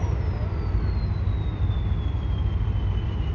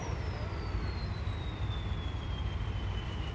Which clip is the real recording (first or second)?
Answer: first